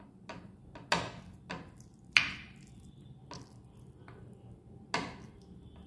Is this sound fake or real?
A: real